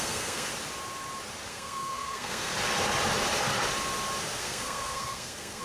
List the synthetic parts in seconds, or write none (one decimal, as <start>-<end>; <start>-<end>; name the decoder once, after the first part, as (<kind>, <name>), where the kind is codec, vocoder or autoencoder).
0.0-0.5 (codec, SNAC); 1.5-2.5; 4.4-5.6